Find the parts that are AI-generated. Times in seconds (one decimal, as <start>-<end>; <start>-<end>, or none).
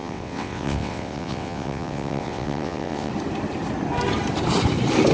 0.0-3.1